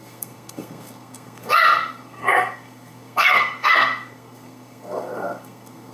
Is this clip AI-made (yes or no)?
yes